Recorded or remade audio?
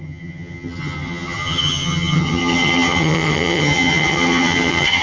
remade